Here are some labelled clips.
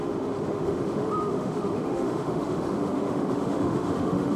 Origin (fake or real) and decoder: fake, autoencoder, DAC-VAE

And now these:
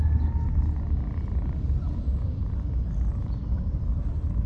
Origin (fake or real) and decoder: real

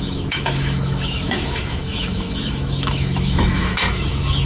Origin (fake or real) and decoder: fake, autoencoder, DAC-VAE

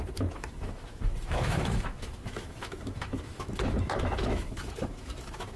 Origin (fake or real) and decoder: fake, autoencoder, DAC-VAE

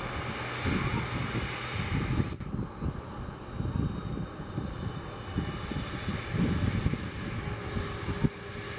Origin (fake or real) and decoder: real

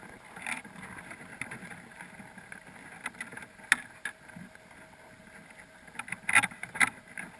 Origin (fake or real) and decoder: real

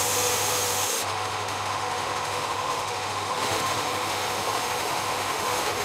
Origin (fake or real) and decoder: fake, autoencoder, DAC-VAE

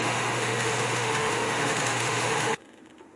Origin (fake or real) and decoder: fake, autoencoder, DAC-VAE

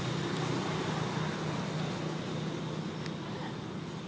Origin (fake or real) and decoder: real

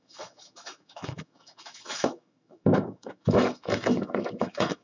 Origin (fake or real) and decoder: fake, autoencoder, DAC-VAE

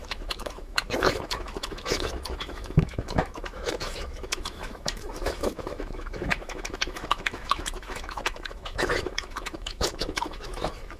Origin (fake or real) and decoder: fake, autoencoder, DAC-VAE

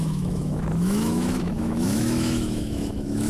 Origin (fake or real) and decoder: fake, autoencoder, DAC-VAE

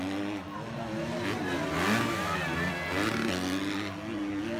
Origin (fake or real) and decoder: real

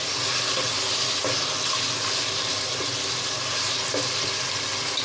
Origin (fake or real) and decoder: real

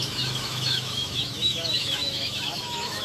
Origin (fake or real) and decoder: fake, autoencoder, DAC-VAE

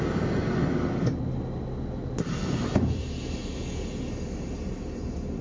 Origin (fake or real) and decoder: real